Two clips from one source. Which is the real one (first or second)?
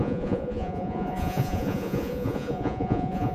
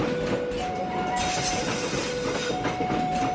second